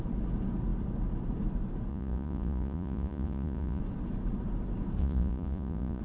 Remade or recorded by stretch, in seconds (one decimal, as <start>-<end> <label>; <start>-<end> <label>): 0.0-1.9 recorded; 1.9-3.8 remade; 3.8-5.0 recorded; 5.0-6.0 remade